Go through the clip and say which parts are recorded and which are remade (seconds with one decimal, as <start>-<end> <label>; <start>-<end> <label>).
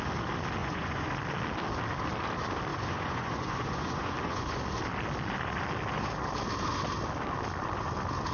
0.0-0.6 recorded; 0.6-1.1 remade; 1.1-2.7 recorded; 2.7-4.6 remade; 4.6-8.3 recorded